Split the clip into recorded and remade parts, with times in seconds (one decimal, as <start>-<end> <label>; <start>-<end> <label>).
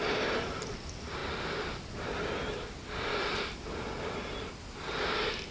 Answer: 0.0-5.5 recorded